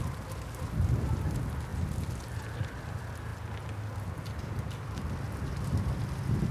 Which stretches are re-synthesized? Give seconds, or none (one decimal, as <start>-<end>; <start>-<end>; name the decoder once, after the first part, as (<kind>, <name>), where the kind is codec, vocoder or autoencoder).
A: none